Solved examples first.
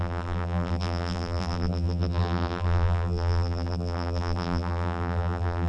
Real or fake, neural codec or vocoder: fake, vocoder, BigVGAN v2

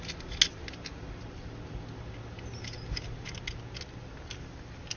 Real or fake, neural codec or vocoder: real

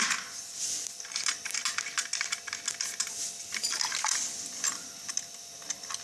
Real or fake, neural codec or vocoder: real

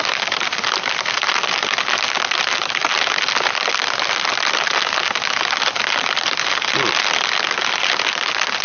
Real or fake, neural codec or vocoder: real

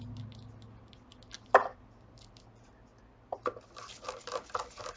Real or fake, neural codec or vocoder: real